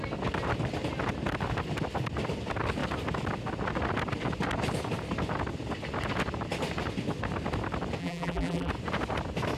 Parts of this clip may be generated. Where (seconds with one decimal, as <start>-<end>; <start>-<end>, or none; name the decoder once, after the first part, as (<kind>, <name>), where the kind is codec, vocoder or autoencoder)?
8.0-8.7 (vocoder, BigVGAN v2)